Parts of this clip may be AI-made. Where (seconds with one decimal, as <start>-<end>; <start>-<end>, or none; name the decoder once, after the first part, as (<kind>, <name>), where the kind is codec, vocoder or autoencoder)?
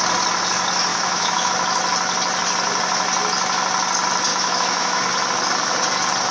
0.9-1.5 (autoencoder, DAC-VAE); 4.3-5.0